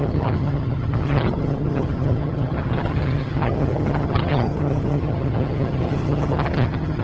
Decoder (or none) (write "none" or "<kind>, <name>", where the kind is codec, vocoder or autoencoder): vocoder, HiFi-GAN